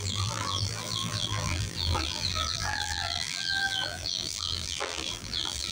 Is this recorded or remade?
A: remade